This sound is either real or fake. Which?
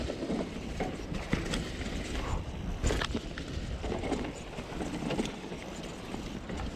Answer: real